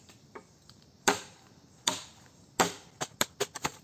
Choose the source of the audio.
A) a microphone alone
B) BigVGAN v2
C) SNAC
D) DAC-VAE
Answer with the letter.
A